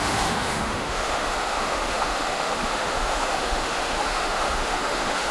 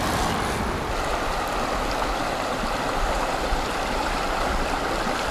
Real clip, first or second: second